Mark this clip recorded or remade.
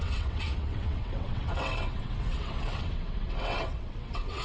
remade